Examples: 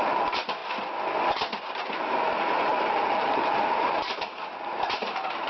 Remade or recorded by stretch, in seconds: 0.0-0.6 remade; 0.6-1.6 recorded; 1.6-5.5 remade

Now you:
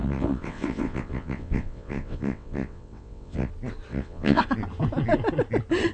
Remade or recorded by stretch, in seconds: 0.0-3.5 remade; 3.5-3.9 recorded; 3.9-4.4 remade; 4.4-5.9 recorded

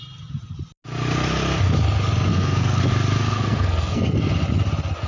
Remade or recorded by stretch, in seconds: 0.0-2.3 recorded; 2.3-2.8 remade; 2.8-3.2 recorded; 3.2-4.3 remade; 4.3-5.1 recorded

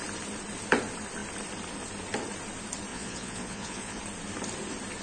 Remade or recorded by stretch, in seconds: 0.0-2.9 recorded; 2.9-4.0 remade; 4.0-5.0 recorded

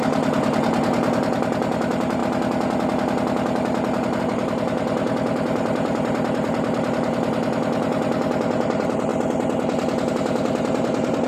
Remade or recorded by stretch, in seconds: 0.0-2.2 remade; 2.2-4.2 recorded; 4.2-9.1 remade; 9.1-10.1 recorded; 10.1-11.3 remade

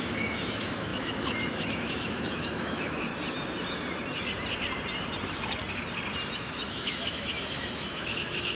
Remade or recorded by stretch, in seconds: 0.0-3.1 remade; 3.1-6.3 recorded; 6.3-8.5 remade

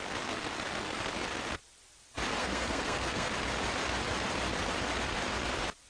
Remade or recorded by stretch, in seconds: 0.0-2.4 recorded; 2.4-3.3 remade; 3.3-5.9 recorded